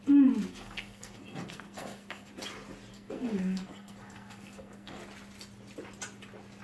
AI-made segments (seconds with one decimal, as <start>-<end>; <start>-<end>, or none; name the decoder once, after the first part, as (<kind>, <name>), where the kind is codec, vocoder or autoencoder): 0.5-2.3 (codec, SNAC); 2.9-5.0